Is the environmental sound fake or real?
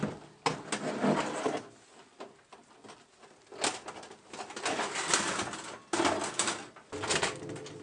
real